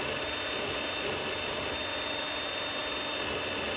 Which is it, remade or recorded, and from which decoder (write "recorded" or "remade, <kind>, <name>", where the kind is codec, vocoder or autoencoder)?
recorded